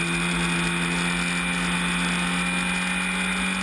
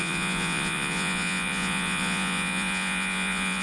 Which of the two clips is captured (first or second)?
first